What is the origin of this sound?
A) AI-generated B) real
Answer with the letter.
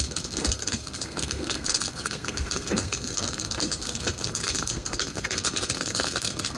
A